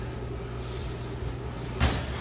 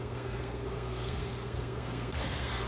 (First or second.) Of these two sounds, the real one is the first